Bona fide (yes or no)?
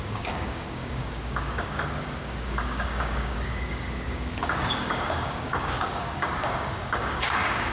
no